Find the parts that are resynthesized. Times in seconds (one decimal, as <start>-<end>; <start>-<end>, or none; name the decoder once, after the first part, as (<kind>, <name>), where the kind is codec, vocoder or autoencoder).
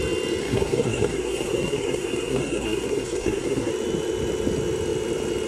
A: 0.4-3.7 (codec, SNAC)